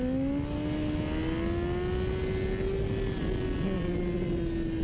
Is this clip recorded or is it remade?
recorded